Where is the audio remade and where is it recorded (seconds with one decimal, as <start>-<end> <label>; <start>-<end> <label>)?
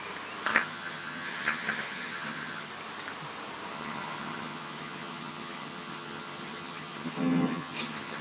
0.0-0.5 recorded; 0.5-2.7 remade; 2.7-3.7 recorded; 3.7-8.2 remade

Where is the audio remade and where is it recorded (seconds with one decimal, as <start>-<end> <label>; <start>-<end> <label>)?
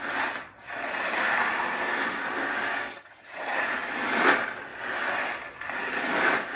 0.0-2.9 recorded; 2.9-3.6 remade; 3.6-6.6 recorded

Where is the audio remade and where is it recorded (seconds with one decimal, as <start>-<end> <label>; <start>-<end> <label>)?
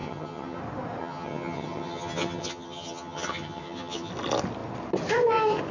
0.0-0.6 remade; 0.6-1.0 recorded; 1.0-4.1 remade; 4.1-5.7 recorded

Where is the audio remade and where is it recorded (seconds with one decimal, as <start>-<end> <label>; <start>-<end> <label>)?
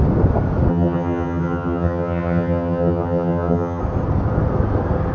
0.0-0.7 recorded; 0.7-3.8 remade; 3.8-5.1 recorded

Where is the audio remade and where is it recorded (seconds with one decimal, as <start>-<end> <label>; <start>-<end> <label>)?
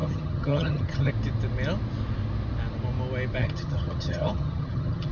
0.0-1.1 remade; 1.1-3.4 recorded; 3.4-5.1 remade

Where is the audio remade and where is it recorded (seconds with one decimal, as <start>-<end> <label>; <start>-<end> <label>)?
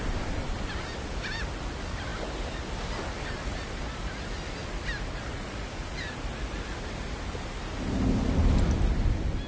0.0-9.5 recorded